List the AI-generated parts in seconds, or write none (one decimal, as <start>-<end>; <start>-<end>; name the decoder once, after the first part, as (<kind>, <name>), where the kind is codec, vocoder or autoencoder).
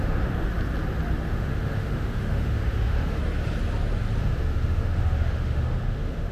0.0-0.5 (autoencoder, DAC-VAE); 1.3-3.2; 4.2-6.3